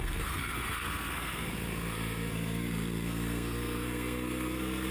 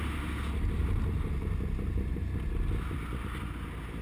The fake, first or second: first